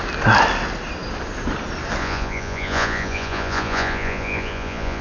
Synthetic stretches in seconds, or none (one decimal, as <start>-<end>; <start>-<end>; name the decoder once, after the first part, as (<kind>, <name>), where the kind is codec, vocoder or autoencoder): 2.0-5.0 (vocoder, Vocos)